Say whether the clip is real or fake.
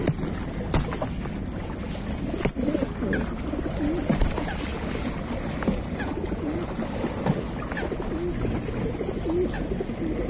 real